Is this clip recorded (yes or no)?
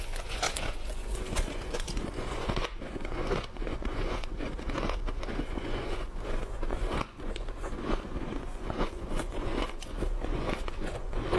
no